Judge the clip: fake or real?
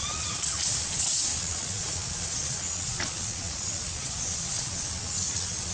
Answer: fake